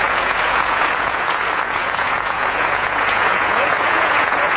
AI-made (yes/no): yes